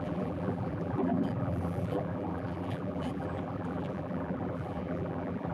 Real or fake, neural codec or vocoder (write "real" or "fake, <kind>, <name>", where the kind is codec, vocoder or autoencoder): fake, vocoder, BigVGAN v2